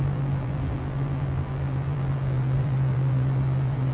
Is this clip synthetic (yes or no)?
yes